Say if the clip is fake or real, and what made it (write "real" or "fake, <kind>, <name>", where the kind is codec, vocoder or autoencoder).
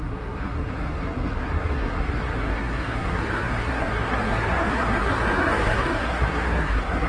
fake, codec, SNAC